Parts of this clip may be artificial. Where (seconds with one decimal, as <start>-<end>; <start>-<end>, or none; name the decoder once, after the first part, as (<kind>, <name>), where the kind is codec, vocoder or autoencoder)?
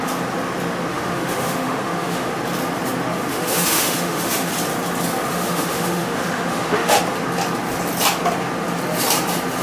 0.9-2.3 (autoencoder, DAC-VAE); 3.3-4.5; 5.3-7.0